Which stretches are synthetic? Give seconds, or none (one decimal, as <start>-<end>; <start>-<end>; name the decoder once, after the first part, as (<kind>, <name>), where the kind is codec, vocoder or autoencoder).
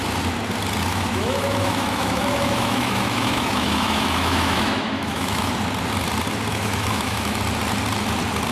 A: 0.9-5.5 (autoencoder, DAC-VAE); 6.5-7.4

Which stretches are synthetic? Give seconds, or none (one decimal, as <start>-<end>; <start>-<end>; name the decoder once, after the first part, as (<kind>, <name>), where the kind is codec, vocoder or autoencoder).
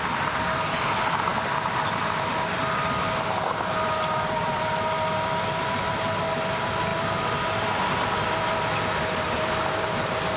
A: none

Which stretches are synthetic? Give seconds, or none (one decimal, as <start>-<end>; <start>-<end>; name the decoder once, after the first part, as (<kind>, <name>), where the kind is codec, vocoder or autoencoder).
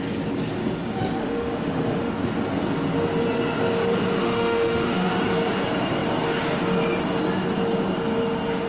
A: 1.2-2.1 (autoencoder, DAC-VAE); 4.2-5.1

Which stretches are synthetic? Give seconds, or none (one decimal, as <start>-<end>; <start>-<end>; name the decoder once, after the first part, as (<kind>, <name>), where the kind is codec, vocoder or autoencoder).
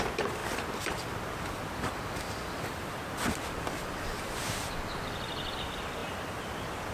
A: none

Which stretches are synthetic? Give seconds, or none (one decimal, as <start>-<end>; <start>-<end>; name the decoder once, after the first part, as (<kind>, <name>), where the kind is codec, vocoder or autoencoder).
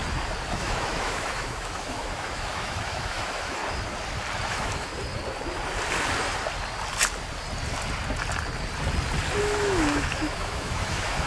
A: 0.5-3.6 (autoencoder, DAC-VAE); 4.5-4.9; 9.4-11.3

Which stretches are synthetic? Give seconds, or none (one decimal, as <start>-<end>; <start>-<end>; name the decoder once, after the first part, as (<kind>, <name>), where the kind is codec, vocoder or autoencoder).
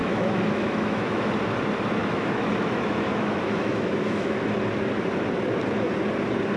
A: 0.0-1.3 (autoencoder, DAC-VAE); 2.0-4.4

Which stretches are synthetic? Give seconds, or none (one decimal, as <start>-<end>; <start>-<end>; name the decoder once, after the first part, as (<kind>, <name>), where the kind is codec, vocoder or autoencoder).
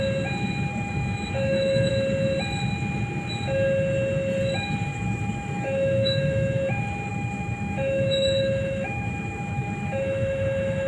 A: 0.7-1.9 (autoencoder, DAC-VAE); 4.9-6.6; 7.1-10.9